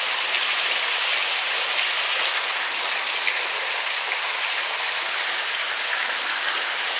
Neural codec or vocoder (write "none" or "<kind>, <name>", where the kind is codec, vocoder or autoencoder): none